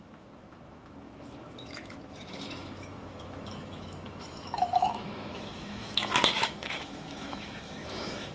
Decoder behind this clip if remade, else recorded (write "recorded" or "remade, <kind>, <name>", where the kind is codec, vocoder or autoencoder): remade, autoencoder, DAC-VAE